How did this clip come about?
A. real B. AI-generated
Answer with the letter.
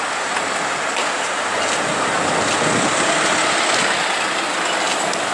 A